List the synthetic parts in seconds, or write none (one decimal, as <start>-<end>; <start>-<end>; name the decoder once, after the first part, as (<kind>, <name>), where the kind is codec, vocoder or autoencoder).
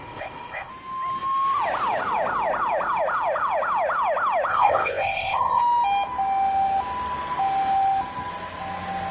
0.0-0.7 (codec, ZipCodec); 4.5-5.6